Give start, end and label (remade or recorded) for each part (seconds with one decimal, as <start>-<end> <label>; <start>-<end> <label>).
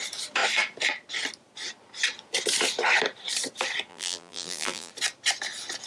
0.0-3.9 recorded; 3.9-4.9 remade; 4.9-5.9 recorded